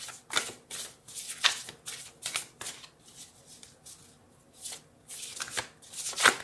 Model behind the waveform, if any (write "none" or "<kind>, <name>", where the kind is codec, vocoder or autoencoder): none